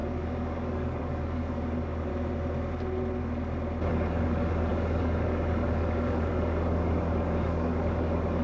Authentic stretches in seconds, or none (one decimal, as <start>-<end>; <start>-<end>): 2.1-3.9